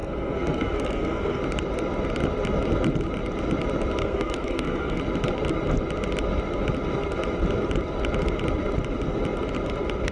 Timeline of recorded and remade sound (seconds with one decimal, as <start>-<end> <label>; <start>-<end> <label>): 0.0-1.4 remade; 1.4-4.0 recorded; 4.0-5.0 remade; 5.0-10.1 recorded